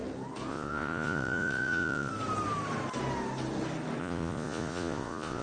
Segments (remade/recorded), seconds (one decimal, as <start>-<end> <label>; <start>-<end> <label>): 0.0-0.5 recorded; 0.5-2.1 remade; 2.1-4.0 recorded; 4.0-5.4 remade